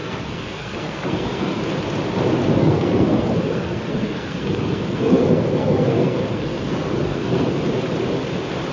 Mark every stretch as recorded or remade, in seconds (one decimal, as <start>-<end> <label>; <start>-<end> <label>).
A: 0.0-1.6 remade; 1.6-2.6 recorded; 2.6-7.6 remade; 7.6-8.7 recorded